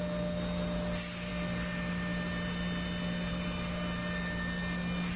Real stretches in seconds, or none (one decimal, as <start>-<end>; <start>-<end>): 0.0-5.2